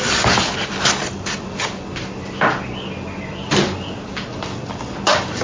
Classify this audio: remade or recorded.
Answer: recorded